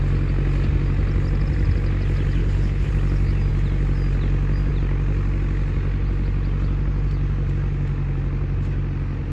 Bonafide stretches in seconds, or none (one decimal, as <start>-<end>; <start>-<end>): 0.0-2.4; 2.9-9.3

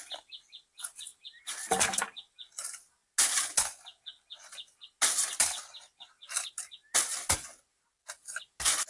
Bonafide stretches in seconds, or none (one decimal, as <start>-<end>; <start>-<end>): 0.0-8.9

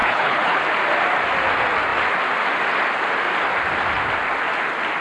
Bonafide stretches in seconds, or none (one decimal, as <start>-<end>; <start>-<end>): 0.6-5.0